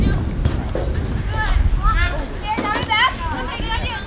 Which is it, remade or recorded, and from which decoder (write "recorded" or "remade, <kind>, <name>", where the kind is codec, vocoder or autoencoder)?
recorded